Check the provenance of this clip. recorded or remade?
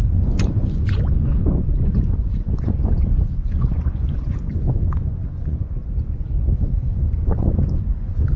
remade